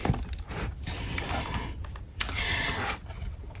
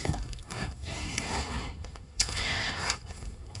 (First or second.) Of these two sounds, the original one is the first